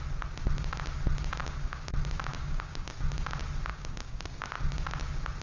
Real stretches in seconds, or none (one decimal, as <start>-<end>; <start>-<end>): 0.0-1.4; 1.9-2.3; 2.9-3.7; 4.3-5.4